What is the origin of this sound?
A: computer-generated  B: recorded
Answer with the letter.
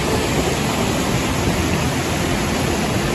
B